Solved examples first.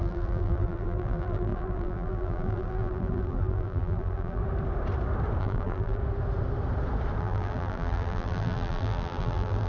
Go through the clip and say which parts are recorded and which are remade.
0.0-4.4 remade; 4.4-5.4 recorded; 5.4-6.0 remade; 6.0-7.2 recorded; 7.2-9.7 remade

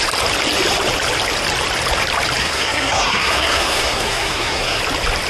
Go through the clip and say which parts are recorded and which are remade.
0.0-2.4 recorded; 2.4-4.8 remade; 4.8-5.3 recorded

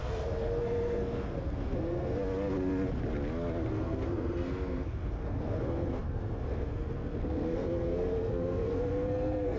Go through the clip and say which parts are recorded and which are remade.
0.0-2.2 remade; 2.2-3.7 recorded; 3.7-9.6 remade

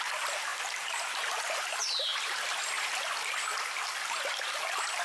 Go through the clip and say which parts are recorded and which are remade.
0.0-5.0 recorded

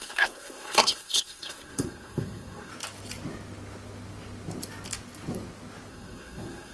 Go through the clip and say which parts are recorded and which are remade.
0.0-2.7 remade; 2.7-5.9 recorded; 5.9-6.7 remade